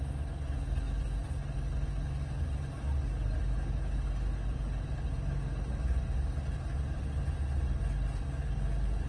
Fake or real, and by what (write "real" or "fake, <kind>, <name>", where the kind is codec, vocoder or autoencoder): real